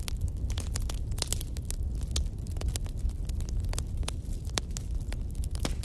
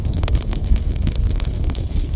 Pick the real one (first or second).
first